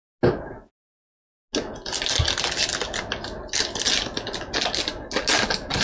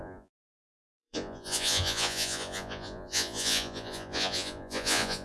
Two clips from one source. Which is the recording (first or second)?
first